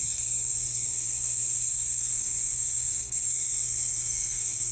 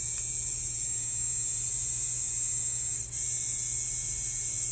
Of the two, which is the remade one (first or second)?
first